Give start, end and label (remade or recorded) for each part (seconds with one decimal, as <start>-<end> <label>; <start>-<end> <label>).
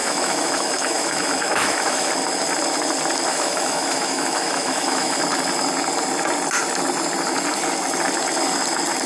0.0-2.1 remade; 2.1-3.3 recorded; 3.3-5.2 remade; 5.2-9.1 recorded